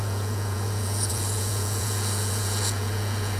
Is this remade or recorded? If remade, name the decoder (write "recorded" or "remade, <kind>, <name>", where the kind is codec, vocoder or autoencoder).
remade, vocoder, Vocos